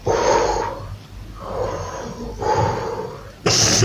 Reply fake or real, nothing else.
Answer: real